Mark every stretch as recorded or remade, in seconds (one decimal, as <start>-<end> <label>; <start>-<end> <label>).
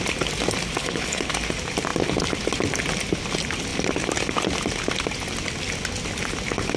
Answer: 0.0-0.8 recorded; 0.8-1.3 remade; 1.3-6.8 recorded